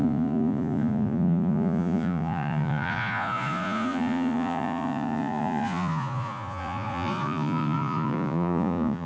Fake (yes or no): yes